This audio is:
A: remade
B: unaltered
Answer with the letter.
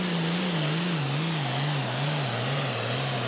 B